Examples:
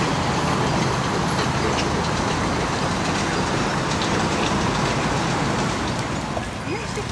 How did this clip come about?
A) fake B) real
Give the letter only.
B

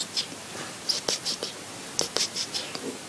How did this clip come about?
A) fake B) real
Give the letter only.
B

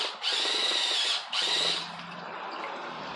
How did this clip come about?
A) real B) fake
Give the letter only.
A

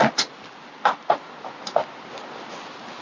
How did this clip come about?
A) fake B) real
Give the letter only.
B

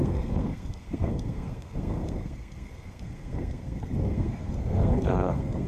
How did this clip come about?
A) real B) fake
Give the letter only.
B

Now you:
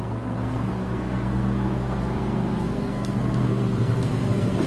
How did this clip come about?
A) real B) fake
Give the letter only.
B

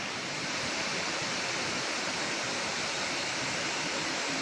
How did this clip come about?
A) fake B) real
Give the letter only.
B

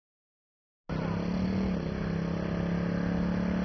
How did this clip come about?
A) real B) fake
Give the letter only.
A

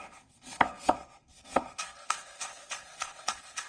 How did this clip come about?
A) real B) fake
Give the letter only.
B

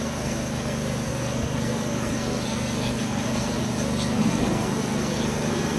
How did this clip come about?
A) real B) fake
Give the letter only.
B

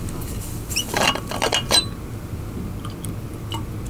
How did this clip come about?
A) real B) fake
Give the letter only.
A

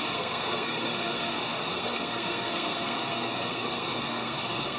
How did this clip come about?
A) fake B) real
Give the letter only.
A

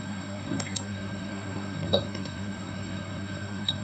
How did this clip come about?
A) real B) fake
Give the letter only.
B